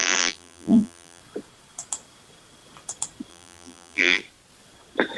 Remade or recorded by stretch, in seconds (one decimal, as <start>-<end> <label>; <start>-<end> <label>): 0.0-1.2 remade; 1.2-3.3 recorded; 3.3-4.2 remade; 4.2-5.2 recorded